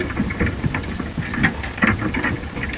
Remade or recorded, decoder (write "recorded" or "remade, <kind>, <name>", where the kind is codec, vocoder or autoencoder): recorded